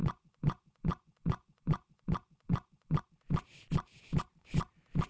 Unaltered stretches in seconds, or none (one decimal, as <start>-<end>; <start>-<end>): 3.0-5.1